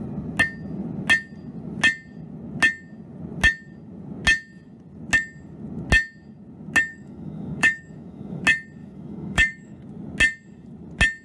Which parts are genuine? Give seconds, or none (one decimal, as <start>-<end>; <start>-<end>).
0.0-6.9; 8.4-8.8; 9.8-11.2